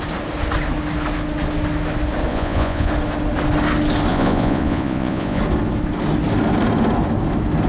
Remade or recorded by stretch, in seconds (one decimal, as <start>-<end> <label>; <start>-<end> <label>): 0.0-2.3 recorded; 2.3-2.9 remade; 2.9-4.1 recorded; 4.1-5.4 remade; 5.4-7.7 recorded